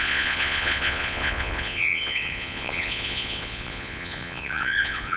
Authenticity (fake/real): fake